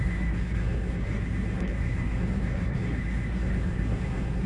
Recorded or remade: remade